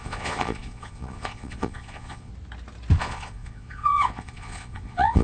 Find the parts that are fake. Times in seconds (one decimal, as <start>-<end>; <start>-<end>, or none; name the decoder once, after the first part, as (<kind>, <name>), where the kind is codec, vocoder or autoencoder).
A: 0.0-2.3 (vocoder, Vocos); 3.0-5.2